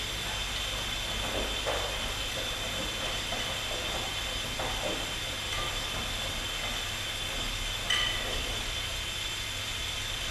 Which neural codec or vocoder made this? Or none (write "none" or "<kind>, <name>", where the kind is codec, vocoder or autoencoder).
none